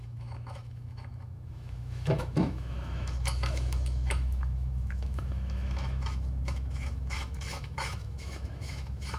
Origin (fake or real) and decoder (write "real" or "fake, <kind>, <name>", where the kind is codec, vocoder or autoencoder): fake, autoencoder, DAC-VAE